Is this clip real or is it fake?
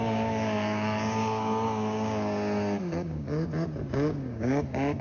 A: fake